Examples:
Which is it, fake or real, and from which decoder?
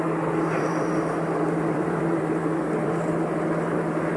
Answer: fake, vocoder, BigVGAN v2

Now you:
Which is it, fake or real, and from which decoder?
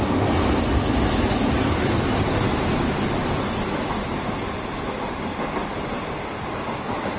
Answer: real